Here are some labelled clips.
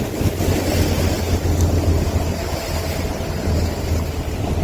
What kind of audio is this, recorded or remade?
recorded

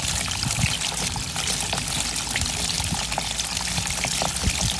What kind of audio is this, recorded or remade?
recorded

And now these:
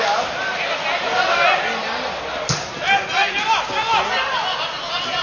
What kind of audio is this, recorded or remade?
recorded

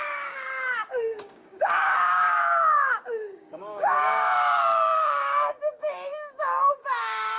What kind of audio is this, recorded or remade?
remade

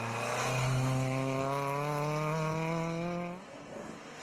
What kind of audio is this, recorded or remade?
recorded